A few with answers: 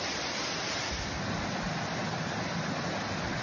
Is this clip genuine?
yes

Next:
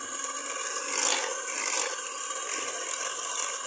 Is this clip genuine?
yes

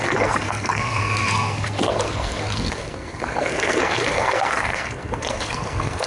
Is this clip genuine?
no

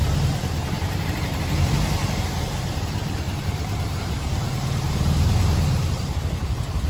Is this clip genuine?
no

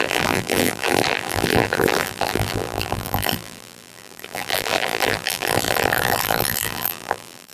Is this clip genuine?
no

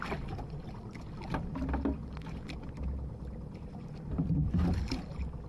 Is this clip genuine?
yes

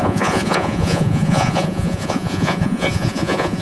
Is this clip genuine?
no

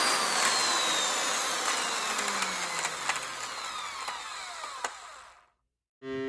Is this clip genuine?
yes